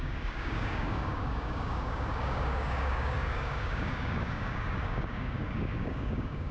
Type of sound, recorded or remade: remade